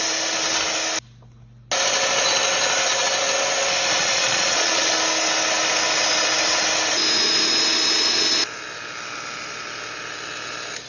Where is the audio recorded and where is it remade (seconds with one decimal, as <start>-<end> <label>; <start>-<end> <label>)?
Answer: 0.0-4.0 recorded; 4.0-4.9 remade; 4.9-10.9 recorded